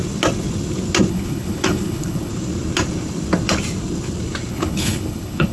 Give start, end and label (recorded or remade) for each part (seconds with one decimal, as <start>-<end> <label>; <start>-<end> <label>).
0.0-1.1 recorded; 1.1-2.3 remade; 2.3-4.5 recorded; 4.5-5.5 remade